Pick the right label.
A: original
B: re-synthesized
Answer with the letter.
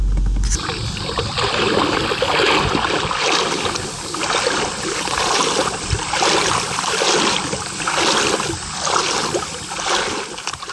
A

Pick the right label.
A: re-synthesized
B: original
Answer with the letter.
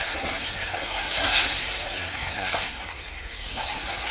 A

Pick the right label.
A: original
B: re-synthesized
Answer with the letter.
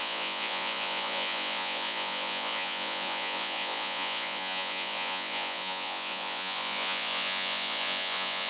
B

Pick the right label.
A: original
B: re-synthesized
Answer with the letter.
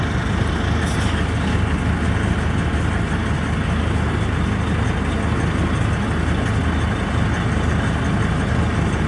A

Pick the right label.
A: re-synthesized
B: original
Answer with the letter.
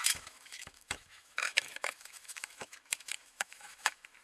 A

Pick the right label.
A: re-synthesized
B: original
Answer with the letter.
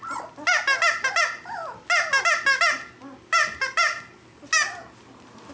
B